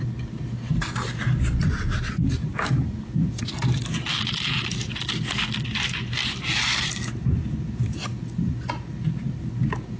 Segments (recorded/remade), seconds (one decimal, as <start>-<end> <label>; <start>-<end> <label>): 0.0-10.0 recorded

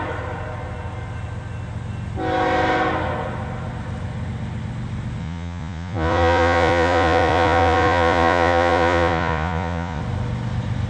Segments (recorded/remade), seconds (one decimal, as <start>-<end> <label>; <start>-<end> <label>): 0.0-5.2 recorded; 5.2-10.0 remade; 10.0-10.9 recorded

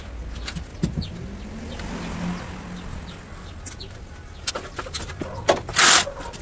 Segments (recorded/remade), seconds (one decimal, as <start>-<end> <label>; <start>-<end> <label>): 0.0-6.4 recorded

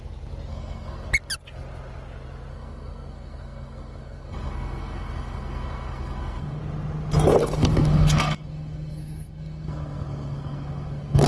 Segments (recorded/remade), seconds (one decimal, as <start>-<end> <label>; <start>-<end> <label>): 0.0-0.5 recorded; 0.5-1.1 remade; 1.1-2.5 recorded; 2.5-6.6 remade; 6.6-7.4 recorded; 7.4-11.3 remade

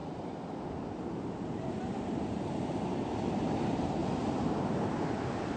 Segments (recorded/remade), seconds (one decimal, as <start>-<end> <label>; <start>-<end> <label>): 0.0-2.2 recorded; 2.2-5.6 remade

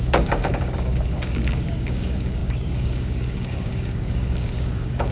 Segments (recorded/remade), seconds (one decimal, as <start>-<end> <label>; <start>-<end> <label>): 0.0-5.1 remade